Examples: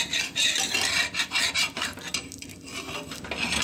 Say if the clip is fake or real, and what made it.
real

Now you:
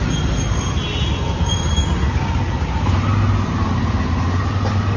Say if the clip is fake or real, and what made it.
real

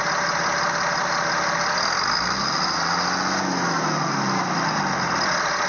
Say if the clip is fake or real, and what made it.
real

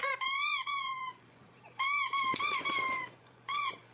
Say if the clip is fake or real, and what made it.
fake, vocoder, Vocos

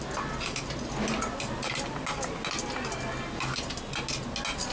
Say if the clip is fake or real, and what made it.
real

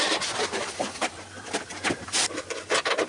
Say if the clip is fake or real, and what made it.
fake, vocoder, BigVGAN v2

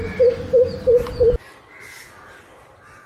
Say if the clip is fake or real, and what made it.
real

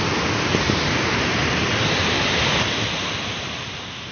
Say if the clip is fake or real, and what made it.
real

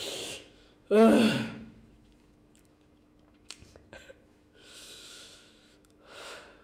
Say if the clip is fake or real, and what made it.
fake, autoencoder, DAC-VAE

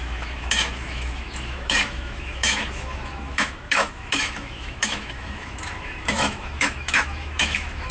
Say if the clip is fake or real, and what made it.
fake, autoencoder, DAC-VAE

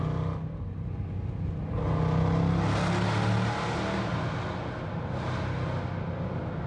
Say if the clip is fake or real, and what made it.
real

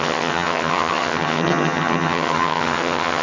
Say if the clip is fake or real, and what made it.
fake, vocoder, HiFi-GAN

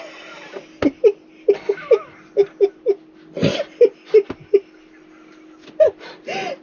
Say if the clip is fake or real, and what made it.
real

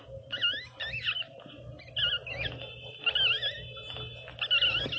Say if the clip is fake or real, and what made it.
real